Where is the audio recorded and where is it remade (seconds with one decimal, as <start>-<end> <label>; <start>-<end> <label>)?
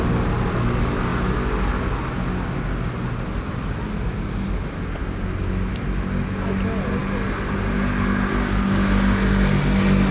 0.0-10.1 recorded